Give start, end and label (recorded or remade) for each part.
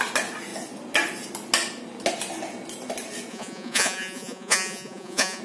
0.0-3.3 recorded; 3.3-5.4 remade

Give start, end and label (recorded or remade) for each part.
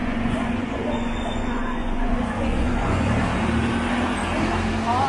0.0-3.1 remade; 3.1-5.1 recorded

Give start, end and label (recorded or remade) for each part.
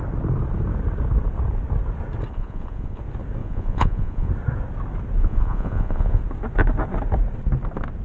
0.0-2.3 recorded; 2.3-3.0 remade; 3.0-3.4 recorded; 3.4-4.3 remade; 4.3-5.2 recorded; 5.2-6.2 remade; 6.2-8.0 recorded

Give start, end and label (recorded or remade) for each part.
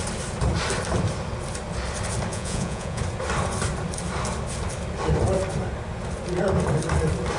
0.0-2.3 recorded; 2.3-3.0 remade; 3.0-7.4 recorded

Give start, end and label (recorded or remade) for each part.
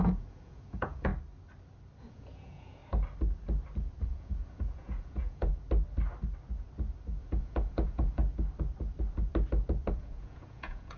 0.0-1.1 remade; 1.1-2.0 recorded; 2.0-2.8 remade; 2.8-4.0 recorded; 4.0-5.5 remade; 5.5-7.2 recorded; 7.2-8.2 remade; 8.2-9.9 recorded; 9.9-11.0 remade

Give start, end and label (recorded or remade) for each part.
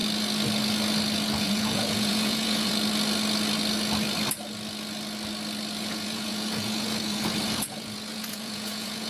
0.0-1.4 recorded; 1.4-2.7 remade; 2.7-5.8 recorded; 5.8-9.1 remade